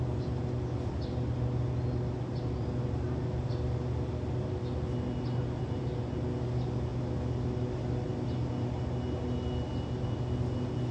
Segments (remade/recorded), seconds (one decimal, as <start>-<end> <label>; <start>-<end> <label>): 0.0-10.9 recorded